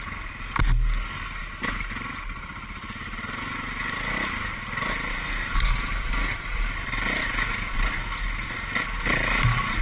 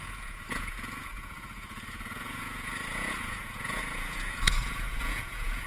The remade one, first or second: second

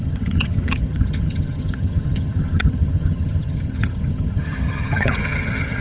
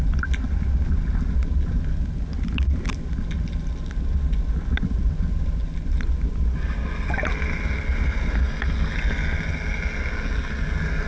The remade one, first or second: first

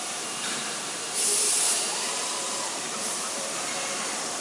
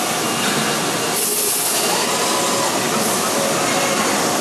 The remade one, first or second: first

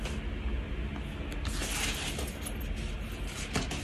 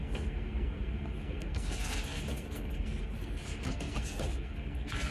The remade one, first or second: second